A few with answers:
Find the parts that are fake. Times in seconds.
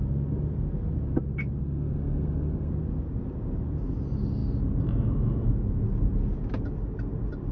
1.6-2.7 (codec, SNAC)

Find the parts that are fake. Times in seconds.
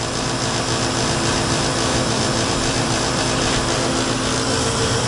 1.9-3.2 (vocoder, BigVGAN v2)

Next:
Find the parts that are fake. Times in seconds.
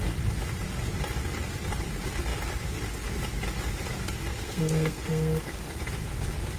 4.3-5.6 (codec, SNAC)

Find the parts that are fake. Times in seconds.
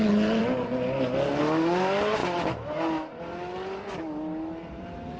none